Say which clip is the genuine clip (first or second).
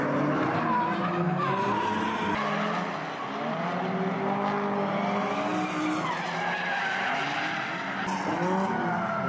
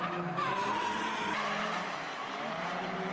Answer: first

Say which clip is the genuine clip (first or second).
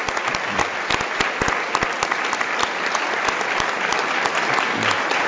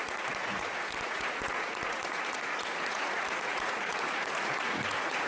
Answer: first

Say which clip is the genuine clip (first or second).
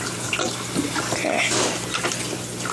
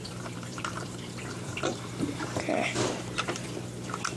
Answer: first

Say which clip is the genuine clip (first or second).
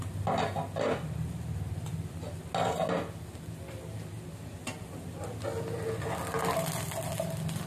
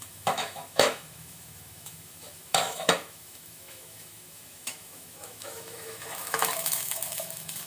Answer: first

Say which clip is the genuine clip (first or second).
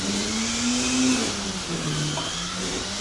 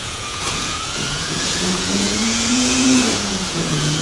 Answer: first